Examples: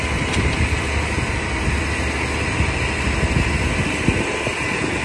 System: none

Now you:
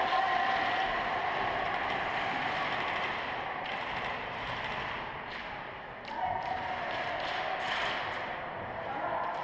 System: none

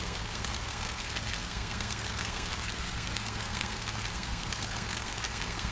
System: codec, SNAC